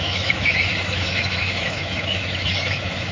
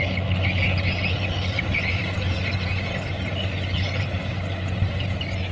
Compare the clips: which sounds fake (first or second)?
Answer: first